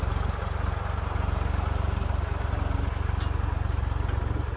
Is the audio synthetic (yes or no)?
no